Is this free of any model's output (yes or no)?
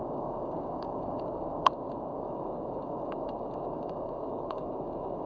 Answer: no